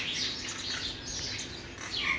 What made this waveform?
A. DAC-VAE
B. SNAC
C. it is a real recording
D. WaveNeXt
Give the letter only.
C